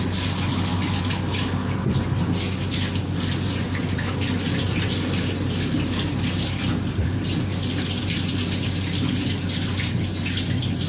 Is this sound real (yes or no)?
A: yes